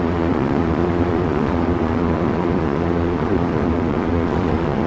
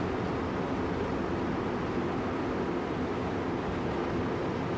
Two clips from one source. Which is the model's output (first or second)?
first